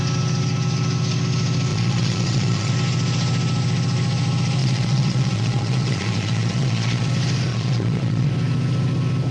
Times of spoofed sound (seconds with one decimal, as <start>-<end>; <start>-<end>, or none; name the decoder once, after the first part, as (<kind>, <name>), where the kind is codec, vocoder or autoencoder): 1.7-2.7 (vocoder, Vocos); 4.6-7.1; 7.5-8.3